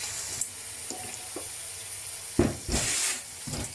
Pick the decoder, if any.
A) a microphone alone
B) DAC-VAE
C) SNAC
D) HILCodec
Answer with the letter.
A